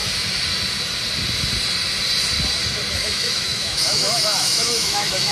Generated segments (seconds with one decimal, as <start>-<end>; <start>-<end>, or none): 2.9-5.3